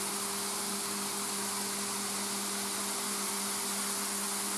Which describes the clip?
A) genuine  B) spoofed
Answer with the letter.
A